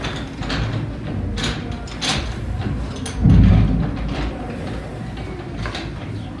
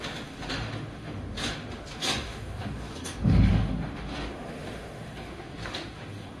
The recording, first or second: first